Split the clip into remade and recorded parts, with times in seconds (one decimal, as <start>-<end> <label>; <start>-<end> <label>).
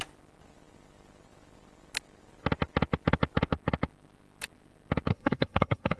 0.0-5.1 recorded; 5.1-6.0 remade